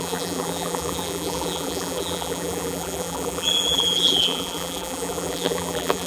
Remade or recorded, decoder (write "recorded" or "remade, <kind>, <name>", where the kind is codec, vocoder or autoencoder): remade, vocoder, BigVGAN v2